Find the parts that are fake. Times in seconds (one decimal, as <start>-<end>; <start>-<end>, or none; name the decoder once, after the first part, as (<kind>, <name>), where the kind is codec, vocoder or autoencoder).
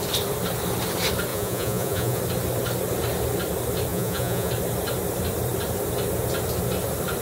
1.3-2.2 (vocoder, Vocos); 3.9-4.5